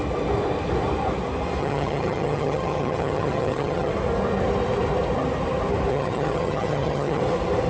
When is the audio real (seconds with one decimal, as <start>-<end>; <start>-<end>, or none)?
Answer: 0.0-1.6; 3.9-5.9; 7.2-7.7